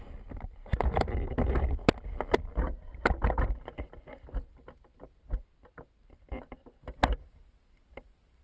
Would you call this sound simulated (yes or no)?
no